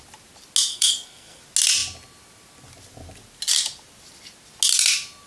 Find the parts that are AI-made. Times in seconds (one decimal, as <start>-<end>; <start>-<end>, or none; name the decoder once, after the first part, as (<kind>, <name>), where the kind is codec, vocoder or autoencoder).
0.7-1.4 (codec, SNAC)